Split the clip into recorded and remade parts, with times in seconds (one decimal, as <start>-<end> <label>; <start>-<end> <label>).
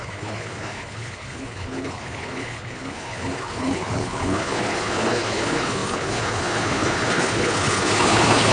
0.0-8.5 remade